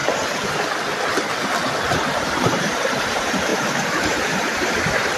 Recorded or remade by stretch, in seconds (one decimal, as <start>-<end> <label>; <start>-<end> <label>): 0.0-1.9 recorded; 1.9-5.2 remade

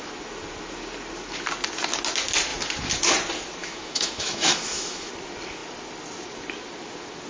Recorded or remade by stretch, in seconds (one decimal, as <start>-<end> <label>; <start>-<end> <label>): 0.0-3.6 recorded; 3.6-5.1 remade; 5.1-7.3 recorded